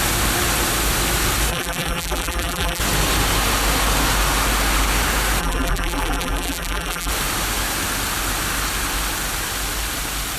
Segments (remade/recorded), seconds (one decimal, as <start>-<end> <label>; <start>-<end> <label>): 0.0-1.5 recorded; 1.5-2.8 remade; 2.8-5.4 recorded; 5.4-7.1 remade; 7.1-10.4 recorded